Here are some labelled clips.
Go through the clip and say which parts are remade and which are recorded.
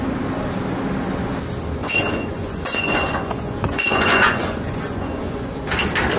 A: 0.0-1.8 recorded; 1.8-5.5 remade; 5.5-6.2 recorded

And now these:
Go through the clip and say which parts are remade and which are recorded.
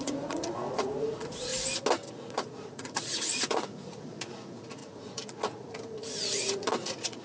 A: 0.0-1.5 remade; 1.5-2.1 recorded; 2.1-7.2 remade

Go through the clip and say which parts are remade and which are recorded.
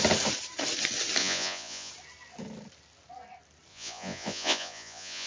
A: 0.0-1.2 recorded; 1.2-1.9 remade; 1.9-3.7 recorded; 3.7-5.3 remade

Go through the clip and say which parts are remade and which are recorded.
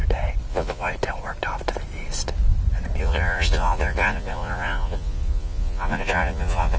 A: 0.0-0.5 recorded; 0.5-0.9 remade; 0.9-3.0 recorded; 3.0-6.8 remade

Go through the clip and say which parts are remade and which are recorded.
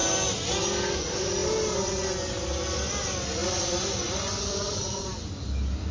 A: 0.0-5.9 recorded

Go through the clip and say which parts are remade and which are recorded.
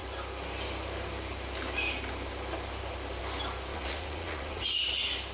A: 0.0-3.7 recorded; 3.7-4.6 remade; 4.6-5.3 recorded